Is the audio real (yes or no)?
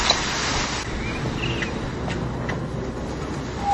yes